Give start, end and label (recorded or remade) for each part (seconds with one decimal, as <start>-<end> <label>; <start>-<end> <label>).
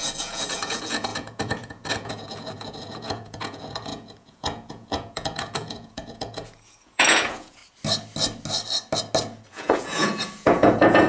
0.0-7.6 remade; 7.6-9.5 recorded; 9.5-11.1 remade